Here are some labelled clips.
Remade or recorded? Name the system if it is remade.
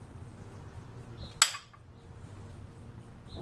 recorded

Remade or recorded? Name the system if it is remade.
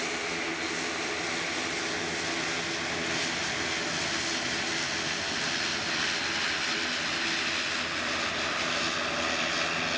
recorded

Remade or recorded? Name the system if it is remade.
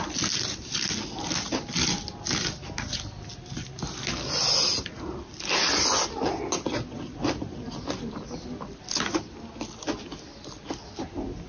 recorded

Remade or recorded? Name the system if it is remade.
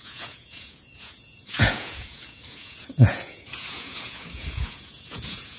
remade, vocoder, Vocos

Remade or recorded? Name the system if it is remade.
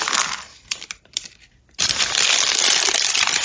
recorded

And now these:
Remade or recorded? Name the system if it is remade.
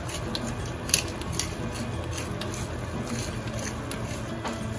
recorded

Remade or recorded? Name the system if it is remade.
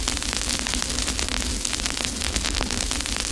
recorded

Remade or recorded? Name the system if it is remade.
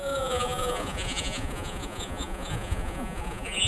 remade, vocoder, Vocos